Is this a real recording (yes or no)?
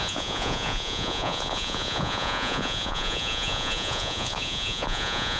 no